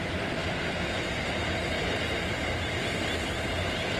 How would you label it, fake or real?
real